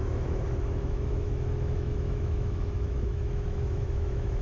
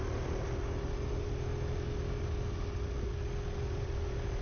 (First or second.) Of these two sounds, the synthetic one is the first